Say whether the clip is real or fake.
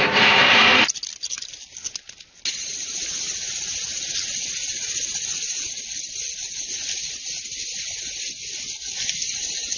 real